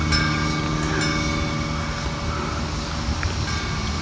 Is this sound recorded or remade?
recorded